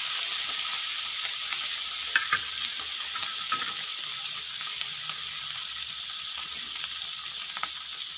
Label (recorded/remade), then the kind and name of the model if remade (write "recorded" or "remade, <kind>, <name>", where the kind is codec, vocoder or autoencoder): recorded